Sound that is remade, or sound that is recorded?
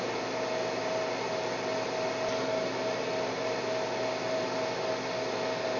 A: recorded